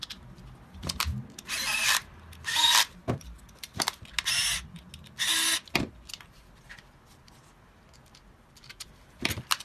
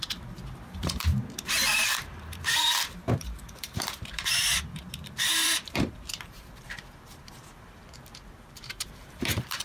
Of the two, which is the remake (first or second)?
second